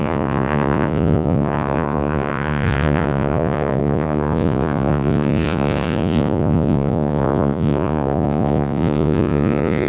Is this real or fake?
fake